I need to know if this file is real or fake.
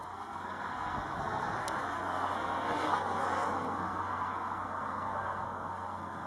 fake